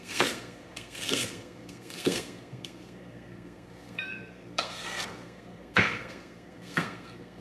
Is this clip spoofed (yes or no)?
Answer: yes